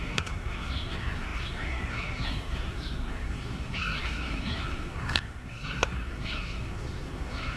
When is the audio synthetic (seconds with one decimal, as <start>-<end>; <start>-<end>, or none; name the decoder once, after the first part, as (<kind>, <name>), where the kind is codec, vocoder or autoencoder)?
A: 0.0-7.6 (codec, SNAC)